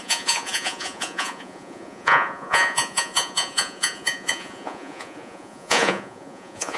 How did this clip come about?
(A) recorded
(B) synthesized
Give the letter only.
B